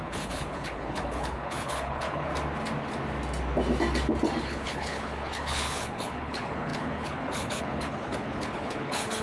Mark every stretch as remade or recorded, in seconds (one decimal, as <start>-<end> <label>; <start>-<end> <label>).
0.0-2.3 remade; 2.3-4.4 recorded; 4.4-9.2 remade